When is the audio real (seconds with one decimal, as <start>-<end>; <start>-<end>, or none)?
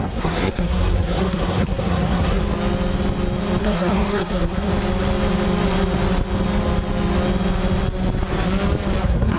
2.4-3.6; 4.7-9.0